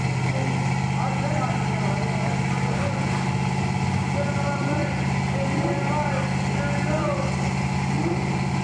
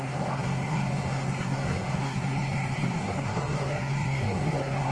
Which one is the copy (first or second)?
second